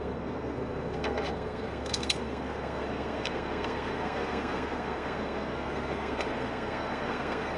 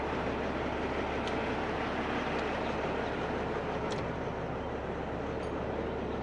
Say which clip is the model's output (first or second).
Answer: first